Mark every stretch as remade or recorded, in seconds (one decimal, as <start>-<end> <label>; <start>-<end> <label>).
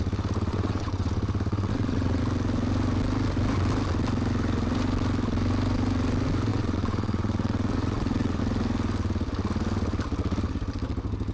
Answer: 0.0-0.5 recorded; 0.5-1.1 remade; 1.1-1.5 recorded; 1.5-2.2 remade; 2.2-6.5 recorded; 6.5-8.4 remade; 8.4-11.3 recorded